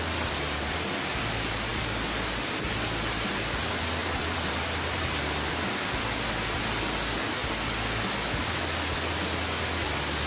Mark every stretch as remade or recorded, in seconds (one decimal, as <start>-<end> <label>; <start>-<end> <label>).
0.0-4.0 recorded; 4.0-5.2 remade; 5.2-10.3 recorded